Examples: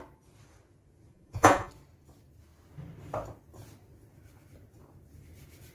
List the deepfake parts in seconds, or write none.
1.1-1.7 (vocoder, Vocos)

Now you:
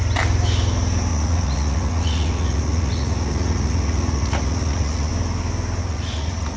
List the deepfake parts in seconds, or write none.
1.1-5.1 (vocoder, Vocos); 5.8-6.6

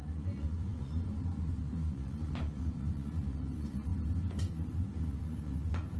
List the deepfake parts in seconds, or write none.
0.0-3.9 (vocoder, Vocos); 4.5-6.0

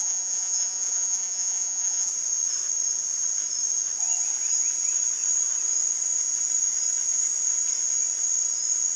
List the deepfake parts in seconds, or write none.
0.0-2.1 (vocoder, Vocos)